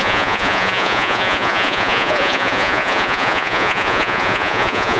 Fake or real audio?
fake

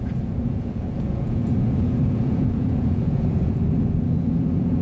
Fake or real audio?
fake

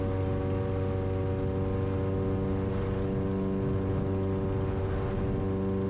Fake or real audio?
real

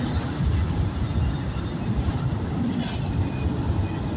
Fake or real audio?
real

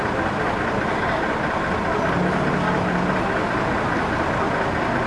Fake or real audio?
real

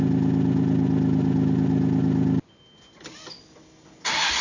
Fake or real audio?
real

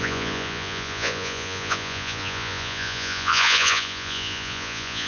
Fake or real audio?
fake